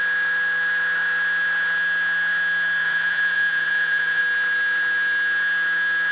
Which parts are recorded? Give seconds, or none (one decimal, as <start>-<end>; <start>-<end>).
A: 0.0-2.8; 4.2-6.1